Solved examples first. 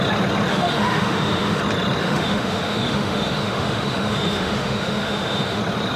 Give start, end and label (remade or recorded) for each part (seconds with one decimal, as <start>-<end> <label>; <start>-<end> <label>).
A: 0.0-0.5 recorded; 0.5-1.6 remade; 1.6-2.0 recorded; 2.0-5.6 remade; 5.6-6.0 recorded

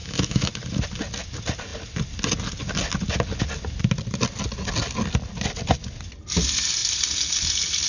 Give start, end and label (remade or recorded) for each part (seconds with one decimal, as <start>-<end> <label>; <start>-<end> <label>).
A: 0.0-0.5 remade; 0.5-7.9 recorded

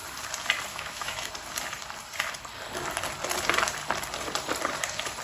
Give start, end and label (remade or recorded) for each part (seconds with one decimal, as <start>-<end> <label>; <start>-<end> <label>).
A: 0.0-0.7 recorded; 0.7-1.3 remade; 1.3-5.2 recorded